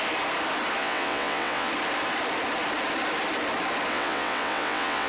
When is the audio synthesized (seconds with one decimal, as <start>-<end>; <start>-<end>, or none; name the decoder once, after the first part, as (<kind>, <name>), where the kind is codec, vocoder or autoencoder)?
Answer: 0.8-1.7 (vocoder, WaveNeXt); 3.9-5.1